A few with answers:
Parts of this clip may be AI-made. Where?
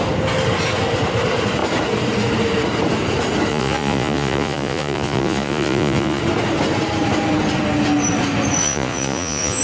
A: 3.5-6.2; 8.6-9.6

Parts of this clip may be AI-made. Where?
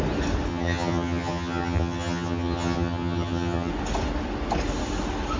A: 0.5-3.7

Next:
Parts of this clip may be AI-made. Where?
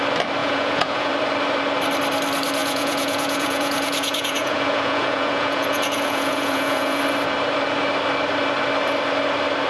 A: 0.4-1.1; 2.6-7.0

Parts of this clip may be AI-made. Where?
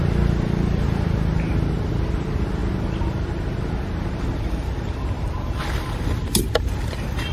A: none